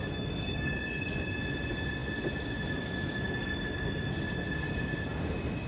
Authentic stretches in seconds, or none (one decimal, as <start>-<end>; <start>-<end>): 1.4-5.7